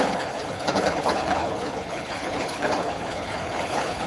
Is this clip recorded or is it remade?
remade